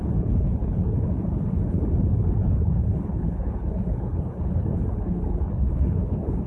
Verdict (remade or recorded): remade